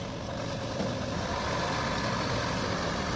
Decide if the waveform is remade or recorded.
recorded